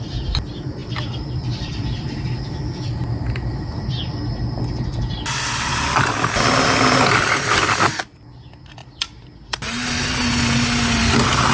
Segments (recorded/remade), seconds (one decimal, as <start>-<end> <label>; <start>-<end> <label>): 0.0-0.8 recorded; 0.8-3.2 remade; 3.2-11.5 recorded